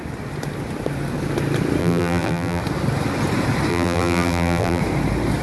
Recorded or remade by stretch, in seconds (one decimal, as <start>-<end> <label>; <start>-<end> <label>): 0.0-1.8 recorded; 1.8-2.6 remade; 2.6-3.7 recorded; 3.7-4.8 remade; 4.8-5.4 recorded